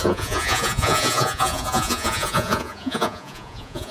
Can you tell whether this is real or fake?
fake